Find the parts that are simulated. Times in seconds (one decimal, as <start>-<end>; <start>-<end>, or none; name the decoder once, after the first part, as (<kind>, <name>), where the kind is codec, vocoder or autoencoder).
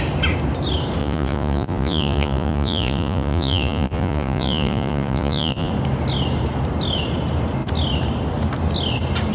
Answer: 1.0-5.7 (vocoder, Vocos)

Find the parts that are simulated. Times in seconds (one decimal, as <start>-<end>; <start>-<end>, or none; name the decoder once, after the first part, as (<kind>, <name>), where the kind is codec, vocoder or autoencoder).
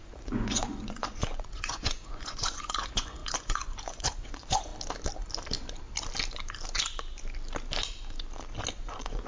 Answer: 0.0-4.7 (vocoder, Vocos); 8.7-9.3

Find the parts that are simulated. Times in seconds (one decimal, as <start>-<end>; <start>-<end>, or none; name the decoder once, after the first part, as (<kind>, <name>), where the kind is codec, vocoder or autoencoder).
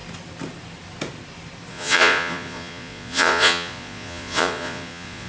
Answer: 1.7-5.3 (vocoder, Vocos)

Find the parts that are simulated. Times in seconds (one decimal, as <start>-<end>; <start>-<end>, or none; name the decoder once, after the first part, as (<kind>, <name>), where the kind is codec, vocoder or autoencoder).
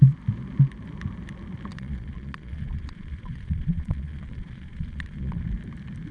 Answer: 1.7-5.4 (vocoder, Vocos)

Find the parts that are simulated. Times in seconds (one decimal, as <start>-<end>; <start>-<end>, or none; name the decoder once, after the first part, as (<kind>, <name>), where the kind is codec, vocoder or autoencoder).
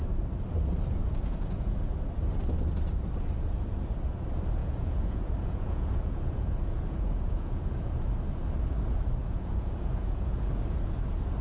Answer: 1.0-1.8 (vocoder, Vocos); 4.6-7.9; 9.2-10.6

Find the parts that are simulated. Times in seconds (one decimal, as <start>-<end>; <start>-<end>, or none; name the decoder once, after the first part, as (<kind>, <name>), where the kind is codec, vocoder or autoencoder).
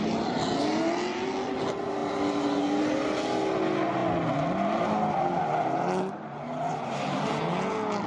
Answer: none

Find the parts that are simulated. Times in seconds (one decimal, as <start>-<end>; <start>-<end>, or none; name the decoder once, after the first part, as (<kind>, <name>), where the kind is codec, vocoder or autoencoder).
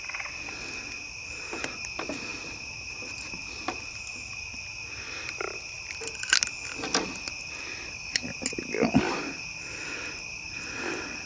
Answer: none